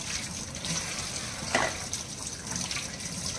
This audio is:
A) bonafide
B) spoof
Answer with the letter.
A